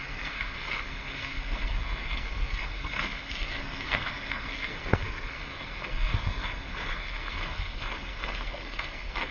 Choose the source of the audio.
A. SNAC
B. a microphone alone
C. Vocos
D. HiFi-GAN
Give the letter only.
A